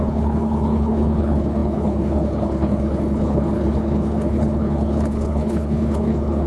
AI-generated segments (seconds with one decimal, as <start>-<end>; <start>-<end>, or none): 0.0-6.5